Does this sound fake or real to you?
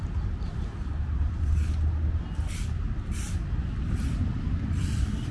real